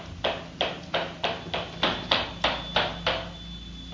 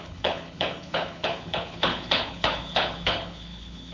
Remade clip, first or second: second